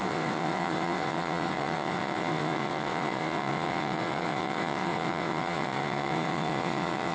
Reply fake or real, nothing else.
fake